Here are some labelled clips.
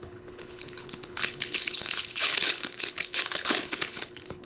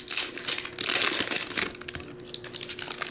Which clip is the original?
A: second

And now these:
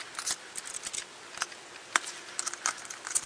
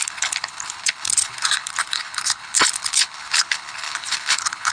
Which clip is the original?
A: first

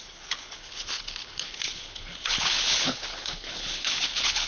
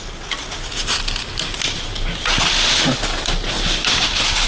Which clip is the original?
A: second